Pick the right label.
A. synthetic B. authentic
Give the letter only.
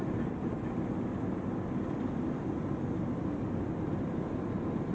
A